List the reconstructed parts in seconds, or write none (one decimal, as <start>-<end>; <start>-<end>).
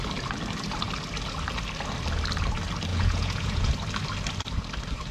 2.9-3.7